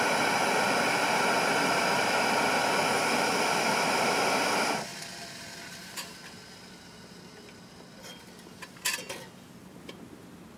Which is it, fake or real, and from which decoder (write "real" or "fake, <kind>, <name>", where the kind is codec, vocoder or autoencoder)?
real